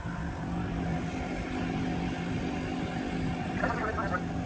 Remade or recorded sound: recorded